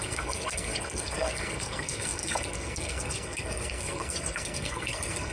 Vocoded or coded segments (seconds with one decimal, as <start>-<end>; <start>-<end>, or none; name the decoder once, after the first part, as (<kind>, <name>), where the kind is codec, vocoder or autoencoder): 0.0-5.3 (codec, SNAC)